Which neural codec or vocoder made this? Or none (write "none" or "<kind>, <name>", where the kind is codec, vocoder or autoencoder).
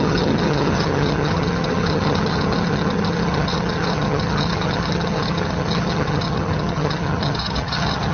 vocoder, HiFi-GAN